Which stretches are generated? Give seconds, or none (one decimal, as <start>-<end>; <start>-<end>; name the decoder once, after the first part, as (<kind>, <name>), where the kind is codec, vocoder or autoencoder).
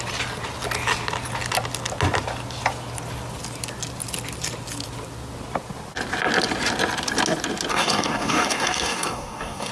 7.7-9.7 (codec, DAC)